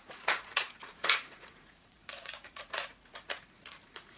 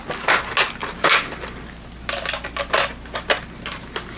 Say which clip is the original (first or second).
second